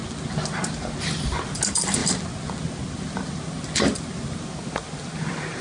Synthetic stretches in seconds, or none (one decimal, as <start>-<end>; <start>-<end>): none